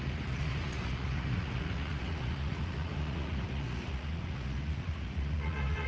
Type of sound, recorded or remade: remade